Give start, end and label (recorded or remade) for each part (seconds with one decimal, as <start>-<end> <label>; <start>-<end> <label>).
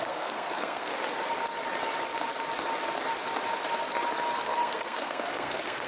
0.0-0.9 remade; 0.9-4.4 recorded; 4.4-5.9 remade